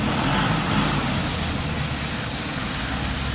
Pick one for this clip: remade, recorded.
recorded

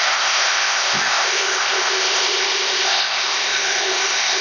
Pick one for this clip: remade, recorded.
remade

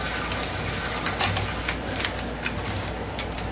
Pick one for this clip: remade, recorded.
recorded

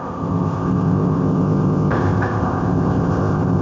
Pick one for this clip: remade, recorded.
remade